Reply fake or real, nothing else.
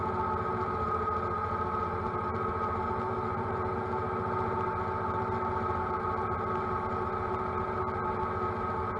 real